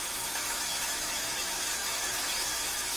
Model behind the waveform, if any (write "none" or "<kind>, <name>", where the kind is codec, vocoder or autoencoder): autoencoder, DAC-VAE